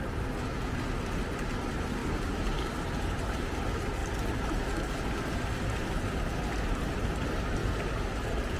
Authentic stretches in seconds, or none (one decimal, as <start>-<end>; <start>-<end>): 0.0-8.6